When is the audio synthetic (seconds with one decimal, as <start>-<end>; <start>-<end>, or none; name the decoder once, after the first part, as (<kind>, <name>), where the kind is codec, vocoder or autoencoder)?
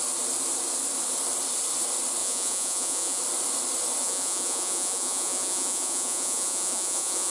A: 2.2-3.2 (vocoder, Vocos); 4.0-7.3